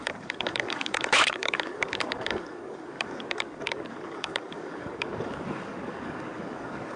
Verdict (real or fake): fake